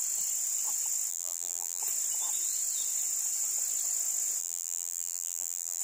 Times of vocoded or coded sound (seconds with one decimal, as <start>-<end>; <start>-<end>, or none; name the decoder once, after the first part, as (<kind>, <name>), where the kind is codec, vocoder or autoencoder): 1.1-1.8 (vocoder, BigVGAN v2); 4.4-5.8